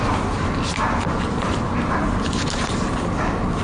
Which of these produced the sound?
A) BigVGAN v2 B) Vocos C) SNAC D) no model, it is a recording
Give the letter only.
D